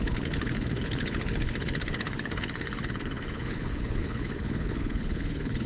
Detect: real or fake fake